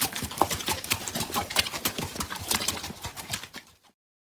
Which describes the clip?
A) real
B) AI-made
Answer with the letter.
A